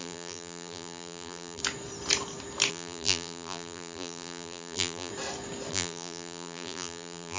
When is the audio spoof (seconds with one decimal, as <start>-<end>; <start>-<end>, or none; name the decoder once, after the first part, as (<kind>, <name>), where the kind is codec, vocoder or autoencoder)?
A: 0.0-1.6 (vocoder, BigVGAN v2); 2.7-5.1; 5.7-7.4